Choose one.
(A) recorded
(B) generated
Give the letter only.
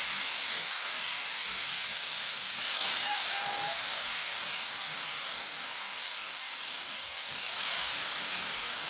B